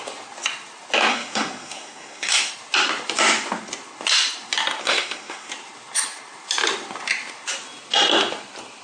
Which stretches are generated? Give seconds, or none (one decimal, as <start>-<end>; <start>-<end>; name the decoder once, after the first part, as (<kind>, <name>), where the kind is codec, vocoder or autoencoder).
1.1-2.5 (codec, SNAC); 4.8-5.5